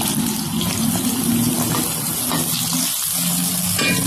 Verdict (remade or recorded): recorded